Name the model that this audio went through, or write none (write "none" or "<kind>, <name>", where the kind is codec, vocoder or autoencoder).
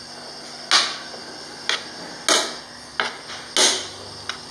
none